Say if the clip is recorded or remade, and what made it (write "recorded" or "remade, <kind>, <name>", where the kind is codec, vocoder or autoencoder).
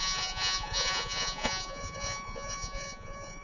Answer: remade, vocoder, Vocos